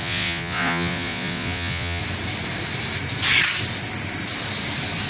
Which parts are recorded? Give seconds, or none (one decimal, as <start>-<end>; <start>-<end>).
2.0-5.1